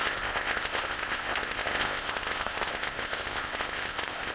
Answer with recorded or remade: remade